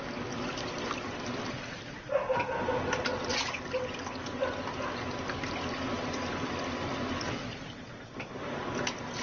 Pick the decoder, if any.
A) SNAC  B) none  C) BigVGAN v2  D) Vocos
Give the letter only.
B